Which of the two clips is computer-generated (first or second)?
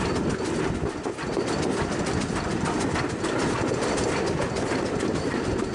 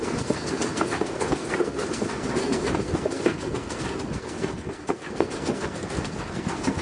second